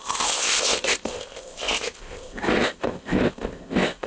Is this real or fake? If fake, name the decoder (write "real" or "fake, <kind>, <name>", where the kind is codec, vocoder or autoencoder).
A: fake, codec, ZipCodec